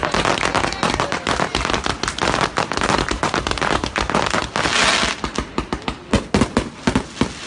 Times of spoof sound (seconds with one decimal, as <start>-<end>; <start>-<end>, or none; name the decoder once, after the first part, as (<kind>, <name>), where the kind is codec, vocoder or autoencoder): none